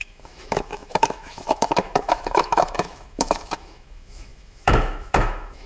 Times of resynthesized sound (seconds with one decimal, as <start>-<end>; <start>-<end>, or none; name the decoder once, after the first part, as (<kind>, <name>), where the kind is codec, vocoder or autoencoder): 0.0-5.7 (autoencoder, DAC-VAE)